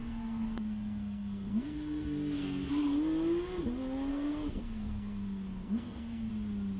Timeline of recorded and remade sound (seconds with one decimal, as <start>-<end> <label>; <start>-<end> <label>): 0.0-2.7 remade; 2.7-4.1 recorded; 4.1-6.3 remade; 6.3-6.8 recorded